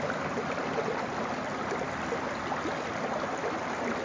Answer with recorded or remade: recorded